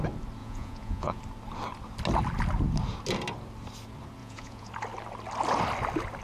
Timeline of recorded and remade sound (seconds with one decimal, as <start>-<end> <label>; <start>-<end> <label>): 0.0-0.4 recorded; 0.4-1.2 remade; 1.2-4.2 recorded; 4.2-4.7 remade; 4.7-6.2 recorded